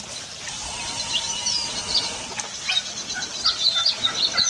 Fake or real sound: real